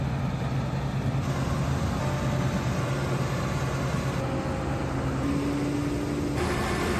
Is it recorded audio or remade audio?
recorded